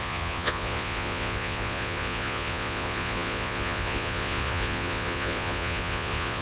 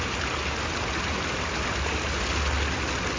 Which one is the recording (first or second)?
second